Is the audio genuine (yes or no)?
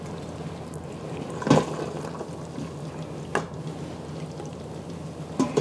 yes